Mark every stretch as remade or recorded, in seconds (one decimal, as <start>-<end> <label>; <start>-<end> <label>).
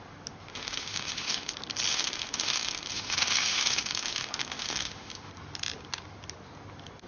0.0-0.5 recorded; 0.5-1.5 remade; 1.5-1.9 recorded; 1.9-5.3 remade; 5.3-7.1 recorded